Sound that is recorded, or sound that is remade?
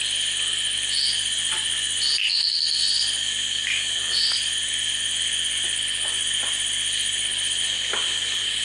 recorded